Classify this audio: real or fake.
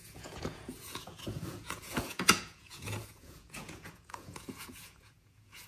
fake